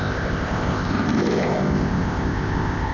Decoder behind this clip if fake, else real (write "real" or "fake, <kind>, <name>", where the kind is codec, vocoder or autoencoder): fake, codec, ZipCodec